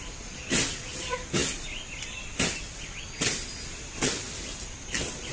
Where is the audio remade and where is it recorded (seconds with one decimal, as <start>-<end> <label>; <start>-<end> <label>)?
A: 0.0-5.3 recorded